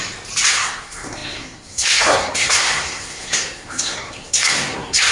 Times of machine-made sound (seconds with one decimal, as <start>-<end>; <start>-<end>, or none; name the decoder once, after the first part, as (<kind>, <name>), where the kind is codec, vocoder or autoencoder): 0.5-5.1 (codec, SNAC)